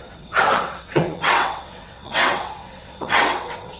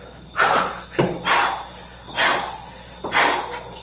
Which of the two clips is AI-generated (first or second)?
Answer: first